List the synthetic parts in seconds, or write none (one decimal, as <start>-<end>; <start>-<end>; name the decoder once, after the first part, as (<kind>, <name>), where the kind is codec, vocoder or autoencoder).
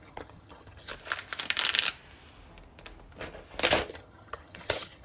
0.0-0.9 (vocoder, HiFi-GAN); 3.9-5.0